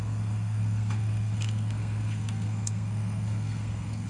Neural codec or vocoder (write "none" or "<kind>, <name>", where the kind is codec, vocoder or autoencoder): codec, SNAC